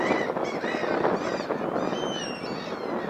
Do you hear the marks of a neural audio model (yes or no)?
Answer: no